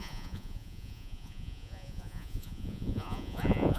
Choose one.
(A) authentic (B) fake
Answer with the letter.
B